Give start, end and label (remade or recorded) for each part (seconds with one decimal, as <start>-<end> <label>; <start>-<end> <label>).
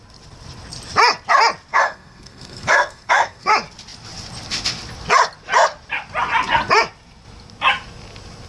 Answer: 0.0-1.7 recorded; 1.7-3.5 remade; 3.5-8.5 recorded